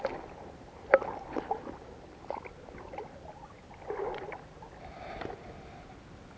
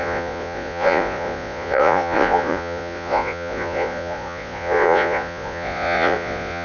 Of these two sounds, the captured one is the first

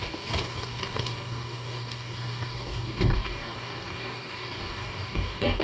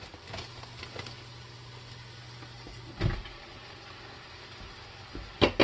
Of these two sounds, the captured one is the second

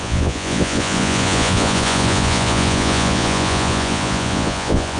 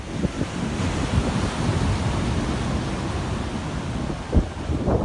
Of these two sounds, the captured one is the second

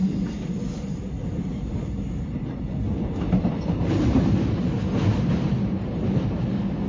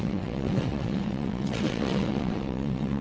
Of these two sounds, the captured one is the first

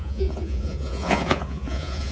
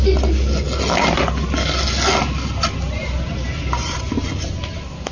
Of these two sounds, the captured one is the second